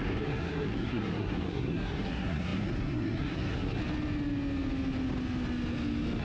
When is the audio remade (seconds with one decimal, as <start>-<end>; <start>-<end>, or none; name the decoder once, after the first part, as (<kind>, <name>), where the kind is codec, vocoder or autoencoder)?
0.0-3.8 (codec, SNAC)